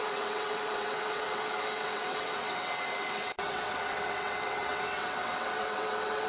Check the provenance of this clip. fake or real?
fake